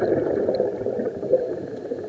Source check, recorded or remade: remade